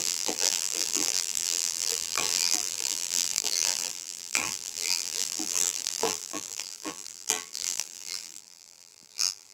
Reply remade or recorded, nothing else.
remade